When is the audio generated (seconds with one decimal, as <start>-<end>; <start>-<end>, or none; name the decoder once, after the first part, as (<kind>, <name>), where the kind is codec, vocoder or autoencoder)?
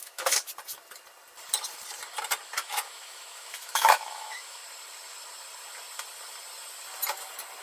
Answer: 0.0-0.5 (autoencoder, DAC-VAE); 2.6-4.6